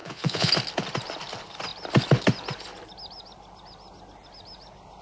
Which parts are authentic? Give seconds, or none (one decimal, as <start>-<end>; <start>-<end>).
0.5-5.0